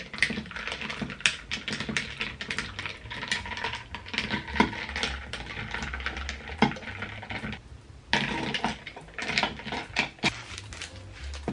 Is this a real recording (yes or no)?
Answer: yes